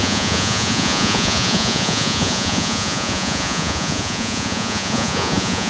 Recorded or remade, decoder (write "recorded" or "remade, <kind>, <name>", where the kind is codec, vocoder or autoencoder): remade, vocoder, Vocos